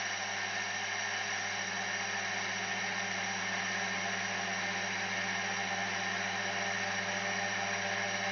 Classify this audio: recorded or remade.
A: recorded